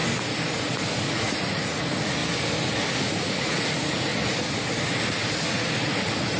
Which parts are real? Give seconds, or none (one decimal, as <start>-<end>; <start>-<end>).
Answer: 0.0-1.0; 2.2-3.0; 4.1-5.5